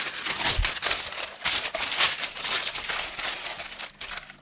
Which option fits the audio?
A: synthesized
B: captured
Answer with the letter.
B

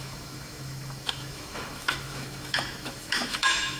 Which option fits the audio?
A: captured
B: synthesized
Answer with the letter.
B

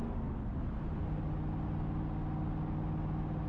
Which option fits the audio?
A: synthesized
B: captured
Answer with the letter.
B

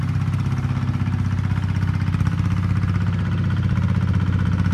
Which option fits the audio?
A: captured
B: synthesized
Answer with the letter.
A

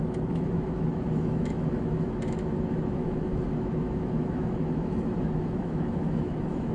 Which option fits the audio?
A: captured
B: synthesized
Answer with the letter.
B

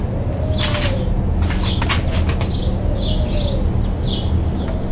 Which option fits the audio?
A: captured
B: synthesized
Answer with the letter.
A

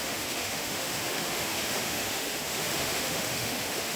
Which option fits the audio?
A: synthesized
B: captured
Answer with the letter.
A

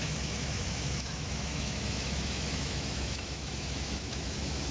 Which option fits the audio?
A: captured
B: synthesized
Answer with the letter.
B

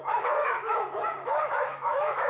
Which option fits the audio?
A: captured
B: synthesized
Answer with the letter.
B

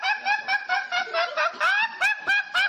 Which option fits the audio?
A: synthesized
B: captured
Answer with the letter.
B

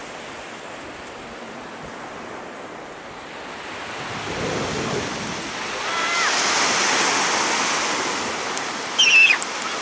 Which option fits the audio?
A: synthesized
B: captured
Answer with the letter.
B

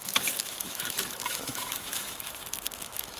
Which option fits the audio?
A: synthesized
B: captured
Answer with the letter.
A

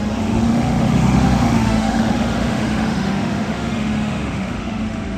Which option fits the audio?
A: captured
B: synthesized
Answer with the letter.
B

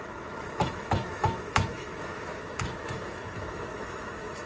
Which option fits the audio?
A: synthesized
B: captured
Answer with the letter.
A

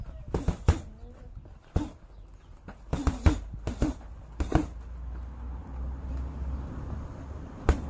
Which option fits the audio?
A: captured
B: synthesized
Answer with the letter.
A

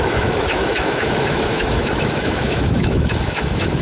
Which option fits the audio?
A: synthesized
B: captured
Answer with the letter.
A